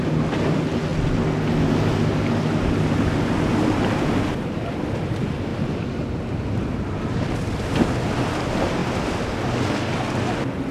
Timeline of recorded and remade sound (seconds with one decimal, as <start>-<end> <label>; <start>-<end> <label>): 0.0-10.7 recorded